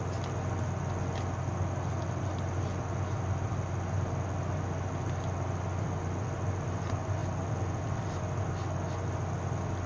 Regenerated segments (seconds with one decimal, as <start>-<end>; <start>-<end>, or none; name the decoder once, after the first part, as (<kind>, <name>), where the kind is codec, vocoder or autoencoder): none